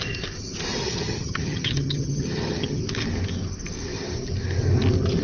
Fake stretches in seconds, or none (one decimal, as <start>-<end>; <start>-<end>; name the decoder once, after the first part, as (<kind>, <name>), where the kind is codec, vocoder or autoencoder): 0.7-2.8 (vocoder, HiFi-GAN)